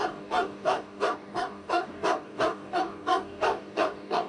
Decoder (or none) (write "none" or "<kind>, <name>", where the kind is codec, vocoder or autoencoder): codec, DAC